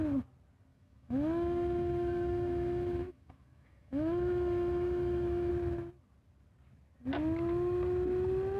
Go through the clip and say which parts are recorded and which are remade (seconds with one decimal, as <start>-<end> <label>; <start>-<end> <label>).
0.0-0.7 recorded; 0.7-5.5 remade; 5.5-8.6 recorded